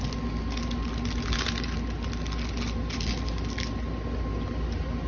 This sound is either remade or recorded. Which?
recorded